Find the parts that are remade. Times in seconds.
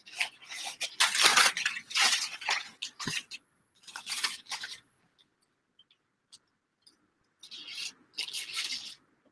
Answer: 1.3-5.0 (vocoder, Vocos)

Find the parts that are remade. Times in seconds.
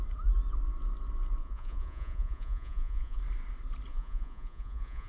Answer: 1.4-3.2 (vocoder, Vocos); 3.9-5.1